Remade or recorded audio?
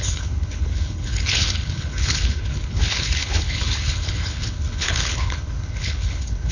remade